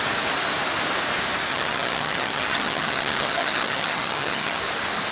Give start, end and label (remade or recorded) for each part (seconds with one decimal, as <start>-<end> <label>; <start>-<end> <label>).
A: 0.0-1.5 recorded; 1.5-4.6 remade; 4.6-5.1 recorded